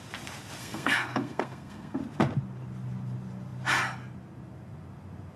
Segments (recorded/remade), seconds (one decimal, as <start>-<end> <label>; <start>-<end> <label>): 0.0-0.6 recorded; 0.6-2.0 remade; 2.0-5.4 recorded